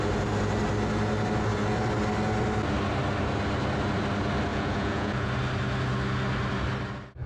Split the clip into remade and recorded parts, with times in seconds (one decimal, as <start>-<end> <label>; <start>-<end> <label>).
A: 0.0-4.5 recorded; 4.5-5.3 remade; 5.3-7.3 recorded